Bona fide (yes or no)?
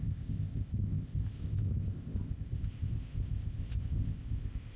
no